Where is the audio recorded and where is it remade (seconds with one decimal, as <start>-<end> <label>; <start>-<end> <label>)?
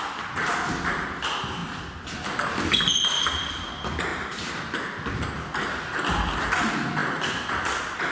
0.0-4.1 recorded; 4.1-4.6 remade; 4.6-8.1 recorded